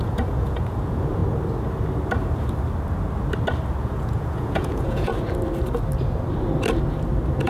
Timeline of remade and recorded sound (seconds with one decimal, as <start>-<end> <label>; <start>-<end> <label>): 0.0-1.2 remade; 1.2-3.8 recorded; 3.8-5.1 remade; 5.1-7.5 recorded